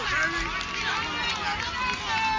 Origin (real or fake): real